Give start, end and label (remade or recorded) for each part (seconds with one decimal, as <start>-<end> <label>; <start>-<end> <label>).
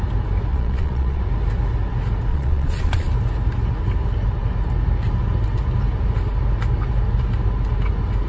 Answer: 0.0-0.5 recorded; 0.5-1.2 remade; 1.2-2.3 recorded; 2.3-3.1 remade; 3.1-8.3 recorded